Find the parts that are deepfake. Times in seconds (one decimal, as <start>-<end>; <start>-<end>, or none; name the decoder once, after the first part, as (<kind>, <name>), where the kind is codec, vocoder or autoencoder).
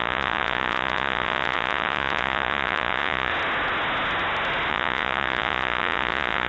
0.0-3.3 (vocoder, Vocos); 4.7-6.5